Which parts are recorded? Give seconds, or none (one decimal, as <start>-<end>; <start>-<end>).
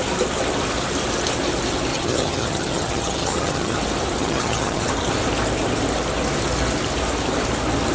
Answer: 0.0-1.9; 3.8-4.2; 4.9-7.9